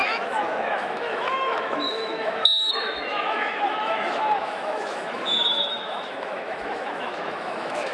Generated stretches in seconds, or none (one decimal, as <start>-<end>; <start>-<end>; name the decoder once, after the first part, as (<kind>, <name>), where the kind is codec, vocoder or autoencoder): 0.0-7.9 (autoencoder, DAC-VAE)